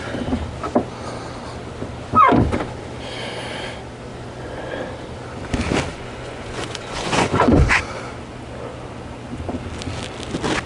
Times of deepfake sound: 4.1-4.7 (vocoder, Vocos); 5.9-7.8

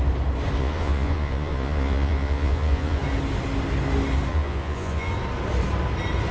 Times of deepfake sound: 0.6-3.0 (vocoder, Vocos); 4.3-5.1

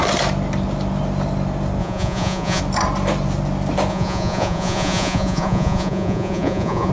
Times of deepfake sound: 1.8-2.6 (vocoder, Vocos); 3.9-6.9